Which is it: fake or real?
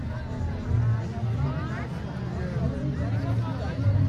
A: real